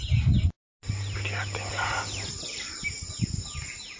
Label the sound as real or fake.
real